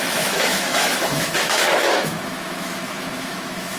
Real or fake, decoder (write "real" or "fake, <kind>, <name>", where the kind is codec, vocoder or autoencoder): fake, autoencoder, DAC-VAE